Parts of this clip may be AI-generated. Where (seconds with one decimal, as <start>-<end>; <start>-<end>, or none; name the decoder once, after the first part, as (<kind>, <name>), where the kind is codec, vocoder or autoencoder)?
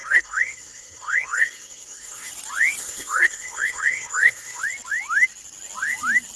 0.0-2.3 (codec, SNAC); 2.8-4.6